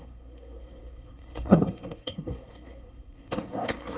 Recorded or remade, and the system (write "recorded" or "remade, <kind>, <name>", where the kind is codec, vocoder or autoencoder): remade, codec, SNAC